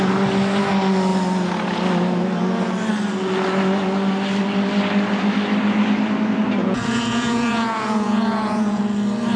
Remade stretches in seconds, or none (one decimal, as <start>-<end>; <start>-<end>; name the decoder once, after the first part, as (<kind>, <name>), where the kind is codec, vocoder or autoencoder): 6.6-8.8 (vocoder, Vocos)